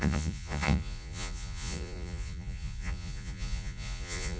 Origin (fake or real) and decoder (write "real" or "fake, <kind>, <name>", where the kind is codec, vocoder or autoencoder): fake, vocoder, Vocos